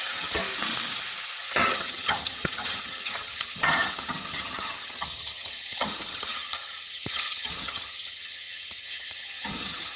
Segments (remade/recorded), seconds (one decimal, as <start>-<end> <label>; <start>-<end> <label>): 0.0-0.4 remade; 0.4-1.4 recorded; 1.4-10.0 remade